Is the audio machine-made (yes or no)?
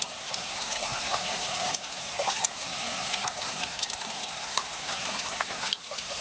yes